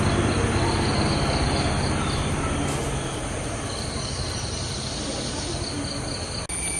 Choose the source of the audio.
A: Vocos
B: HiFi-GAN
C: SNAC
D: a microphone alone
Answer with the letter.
D